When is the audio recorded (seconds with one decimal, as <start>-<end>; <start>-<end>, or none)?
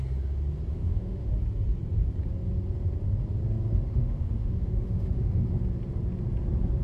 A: 0.0-0.7; 1.3-3.9; 5.5-6.8